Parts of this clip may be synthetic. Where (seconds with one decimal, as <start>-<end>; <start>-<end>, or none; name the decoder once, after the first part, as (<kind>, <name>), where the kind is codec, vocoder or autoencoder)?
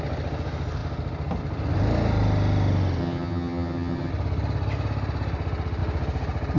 3.0-4.1 (vocoder, HiFi-GAN)